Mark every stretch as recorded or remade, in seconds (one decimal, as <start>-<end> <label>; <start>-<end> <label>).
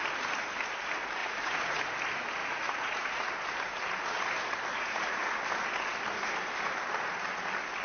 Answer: 0.0-1.2 recorded; 1.2-1.8 remade; 1.8-2.4 recorded; 2.4-3.2 remade; 3.2-4.7 recorded; 4.7-5.2 remade; 5.2-7.8 recorded